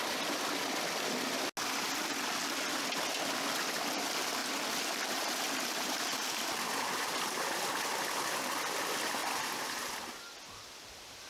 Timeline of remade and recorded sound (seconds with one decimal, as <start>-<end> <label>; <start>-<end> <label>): 0.0-4.4 recorded; 4.4-7.2 remade; 7.2-9.2 recorded; 9.2-9.9 remade; 9.9-11.3 recorded